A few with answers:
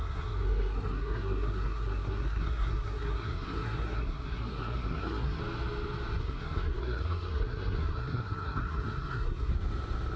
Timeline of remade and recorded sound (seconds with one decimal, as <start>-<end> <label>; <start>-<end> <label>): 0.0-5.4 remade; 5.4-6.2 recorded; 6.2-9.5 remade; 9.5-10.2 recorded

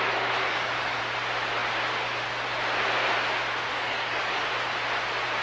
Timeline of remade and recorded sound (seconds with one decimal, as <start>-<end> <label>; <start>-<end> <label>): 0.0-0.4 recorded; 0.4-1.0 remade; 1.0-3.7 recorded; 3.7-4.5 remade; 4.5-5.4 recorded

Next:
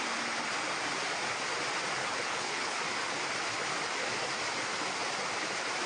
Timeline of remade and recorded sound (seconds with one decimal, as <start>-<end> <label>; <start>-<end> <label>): 0.0-2.0 recorded; 2.0-2.8 remade; 2.8-5.9 recorded

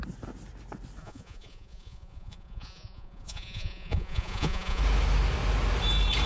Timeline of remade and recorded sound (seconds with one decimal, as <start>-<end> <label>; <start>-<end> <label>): 0.0-1.0 recorded; 1.0-4.8 remade; 4.8-6.3 recorded